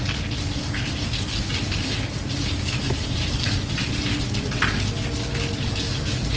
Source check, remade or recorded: recorded